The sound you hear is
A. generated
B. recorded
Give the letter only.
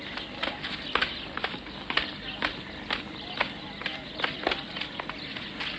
B